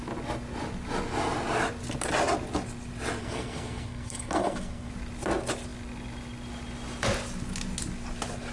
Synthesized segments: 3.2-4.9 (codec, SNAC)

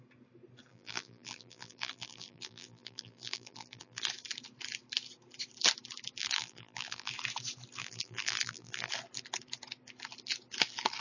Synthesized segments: 0.7-4.1 (vocoder, BigVGAN v2); 6.2-7.1; 7.8-8.9